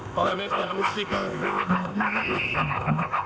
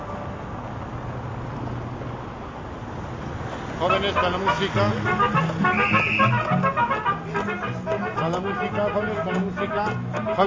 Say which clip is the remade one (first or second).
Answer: first